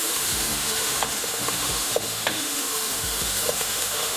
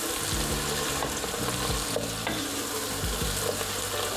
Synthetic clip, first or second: first